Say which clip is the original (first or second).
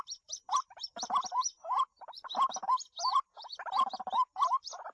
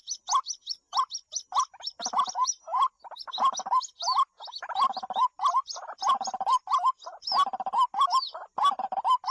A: second